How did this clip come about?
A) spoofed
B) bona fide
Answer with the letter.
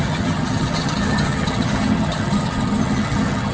A